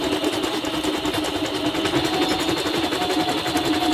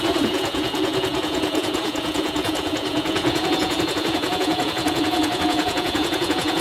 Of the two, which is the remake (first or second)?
second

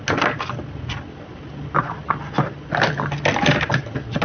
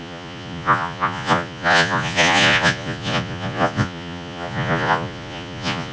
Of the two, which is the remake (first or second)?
second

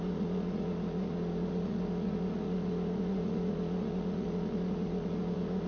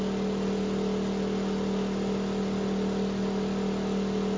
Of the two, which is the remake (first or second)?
first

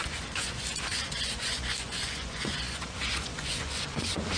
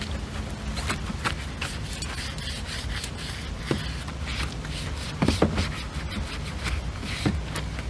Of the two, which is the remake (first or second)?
first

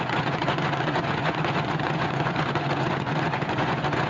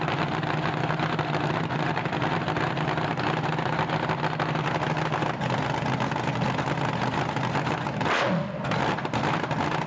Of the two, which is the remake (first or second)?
first